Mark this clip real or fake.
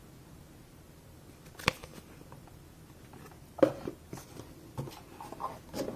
real